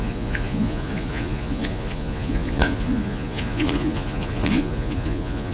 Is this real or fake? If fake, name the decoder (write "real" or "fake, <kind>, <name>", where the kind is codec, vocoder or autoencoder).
fake, vocoder, Vocos